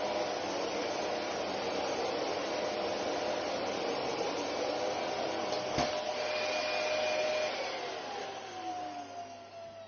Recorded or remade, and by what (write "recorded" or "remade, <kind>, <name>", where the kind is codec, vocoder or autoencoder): recorded